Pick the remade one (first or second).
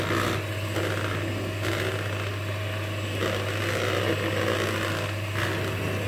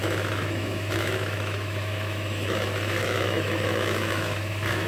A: second